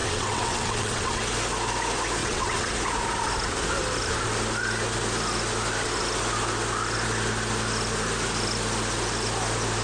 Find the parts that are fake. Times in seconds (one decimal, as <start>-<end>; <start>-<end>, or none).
0.0-1.2; 2.2-2.7